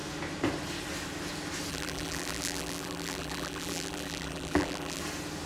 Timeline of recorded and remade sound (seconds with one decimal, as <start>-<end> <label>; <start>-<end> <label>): 0.0-1.7 recorded; 1.7-5.0 remade; 5.0-5.5 recorded